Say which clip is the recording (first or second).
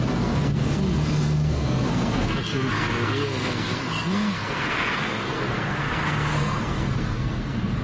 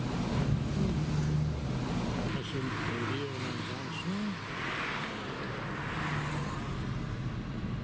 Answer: second